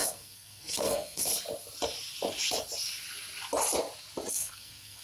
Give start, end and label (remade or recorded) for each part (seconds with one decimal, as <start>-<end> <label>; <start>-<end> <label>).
0.0-1.3 remade; 1.3-4.3 recorded; 4.3-5.0 remade